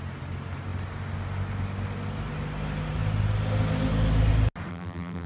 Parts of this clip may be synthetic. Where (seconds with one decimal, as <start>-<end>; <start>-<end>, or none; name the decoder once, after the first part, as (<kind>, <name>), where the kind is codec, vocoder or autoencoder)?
4.7-5.3 (vocoder, BigVGAN v2)